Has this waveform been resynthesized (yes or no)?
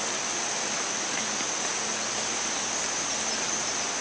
no